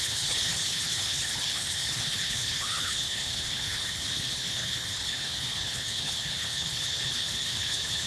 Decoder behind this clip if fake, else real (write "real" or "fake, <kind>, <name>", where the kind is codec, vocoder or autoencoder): fake, codec, HILCodec